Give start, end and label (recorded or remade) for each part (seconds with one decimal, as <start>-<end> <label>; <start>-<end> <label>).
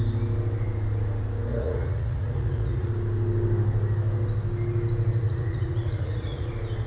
0.0-1.5 recorded; 1.5-2.9 remade; 2.9-5.2 recorded; 5.2-6.5 remade; 6.5-6.9 recorded